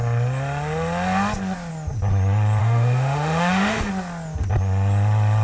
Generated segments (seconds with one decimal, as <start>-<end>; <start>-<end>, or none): 2.6-3.9